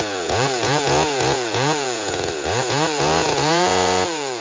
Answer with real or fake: fake